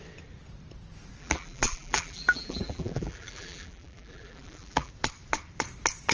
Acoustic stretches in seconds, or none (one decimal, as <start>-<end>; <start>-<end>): 0.0-1.2; 4.9-6.1